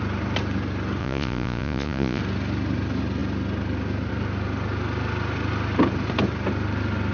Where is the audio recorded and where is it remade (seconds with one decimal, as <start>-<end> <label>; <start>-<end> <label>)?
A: 0.0-1.0 recorded; 1.0-2.2 remade; 2.2-7.1 recorded